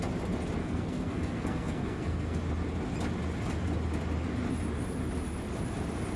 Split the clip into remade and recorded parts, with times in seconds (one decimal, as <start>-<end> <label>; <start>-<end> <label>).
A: 0.0-0.6 recorded; 0.6-2.4 remade; 2.4-6.2 recorded